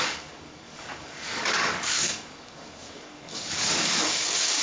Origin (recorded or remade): remade